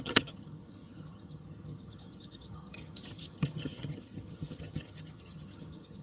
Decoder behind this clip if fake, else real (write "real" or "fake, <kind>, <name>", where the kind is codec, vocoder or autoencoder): fake, vocoder, HiFi-GAN